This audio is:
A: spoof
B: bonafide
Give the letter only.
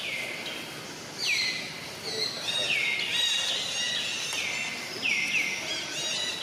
B